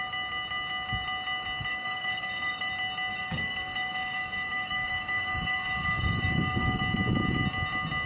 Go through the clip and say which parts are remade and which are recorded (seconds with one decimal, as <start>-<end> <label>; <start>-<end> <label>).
0.0-1.7 recorded; 1.7-2.7 remade; 2.7-3.1 recorded; 3.1-6.8 remade; 6.8-8.1 recorded